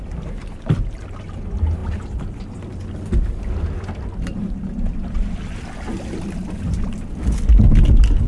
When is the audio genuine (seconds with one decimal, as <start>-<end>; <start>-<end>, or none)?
0.0-8.3